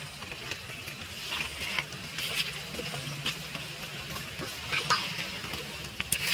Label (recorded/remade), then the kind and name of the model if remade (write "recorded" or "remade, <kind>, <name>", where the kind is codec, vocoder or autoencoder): recorded